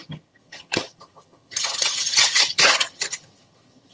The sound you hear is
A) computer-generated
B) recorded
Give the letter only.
A